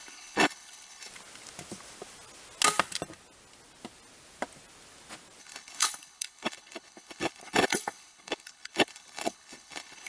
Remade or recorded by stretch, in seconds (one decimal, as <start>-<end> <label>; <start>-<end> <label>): 0.0-1.1 remade; 1.1-5.4 recorded; 5.4-10.1 remade